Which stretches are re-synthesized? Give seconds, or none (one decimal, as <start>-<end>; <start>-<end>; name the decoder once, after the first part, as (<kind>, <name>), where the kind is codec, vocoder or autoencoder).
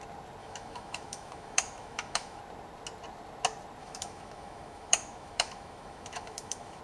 0.4-2.4 (autoencoder, DAC-VAE); 3.8-6.8